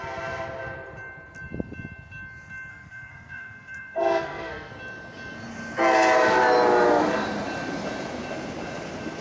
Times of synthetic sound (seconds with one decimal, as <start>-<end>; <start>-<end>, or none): 2.7-4.7